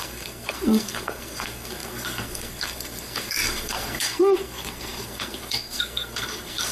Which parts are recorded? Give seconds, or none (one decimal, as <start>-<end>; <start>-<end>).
none